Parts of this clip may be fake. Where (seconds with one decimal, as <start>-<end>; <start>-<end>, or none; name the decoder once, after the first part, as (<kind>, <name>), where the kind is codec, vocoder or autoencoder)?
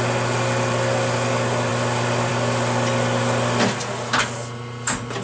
none